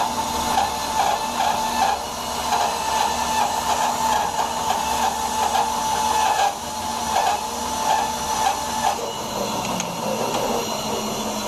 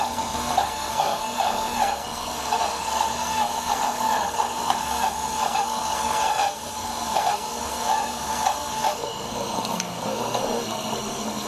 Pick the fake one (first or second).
second